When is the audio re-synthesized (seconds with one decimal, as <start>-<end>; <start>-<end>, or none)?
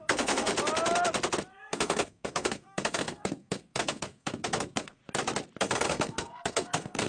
0.0-0.5; 1.5-5.0; 5.6-7.1